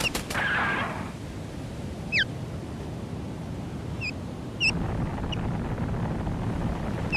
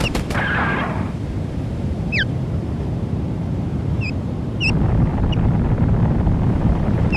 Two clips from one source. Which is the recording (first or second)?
first